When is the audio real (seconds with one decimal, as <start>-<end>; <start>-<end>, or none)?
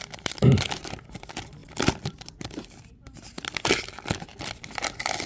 0.0-1.6; 3.3-4.3